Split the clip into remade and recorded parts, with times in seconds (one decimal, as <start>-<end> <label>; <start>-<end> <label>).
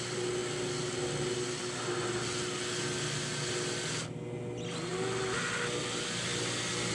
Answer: 0.0-6.9 recorded